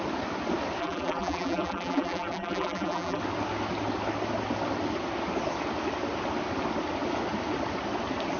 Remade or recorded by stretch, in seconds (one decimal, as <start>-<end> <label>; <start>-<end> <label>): 0.0-0.8 recorded; 0.8-3.2 remade; 3.2-8.4 recorded